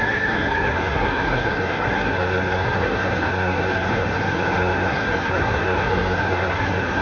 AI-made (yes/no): yes